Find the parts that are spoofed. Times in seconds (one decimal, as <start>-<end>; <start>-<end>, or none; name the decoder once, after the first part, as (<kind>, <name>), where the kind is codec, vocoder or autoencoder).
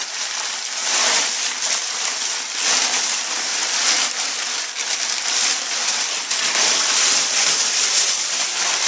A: 0.0-3.5 (vocoder, BigVGAN v2); 4.4-8.9